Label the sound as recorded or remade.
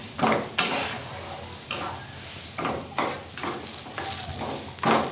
recorded